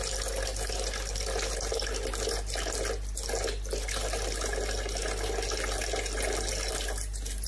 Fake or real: real